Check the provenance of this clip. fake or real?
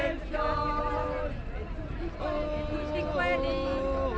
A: real